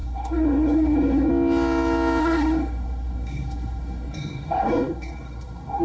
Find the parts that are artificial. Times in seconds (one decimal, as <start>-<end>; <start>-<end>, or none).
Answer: 0.0-1.3; 2.2-5.8